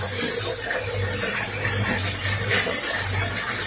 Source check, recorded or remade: recorded